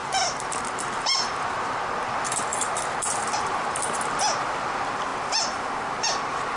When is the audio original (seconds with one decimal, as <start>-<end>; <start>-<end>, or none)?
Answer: none